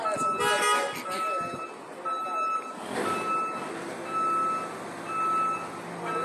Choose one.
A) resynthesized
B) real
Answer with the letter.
B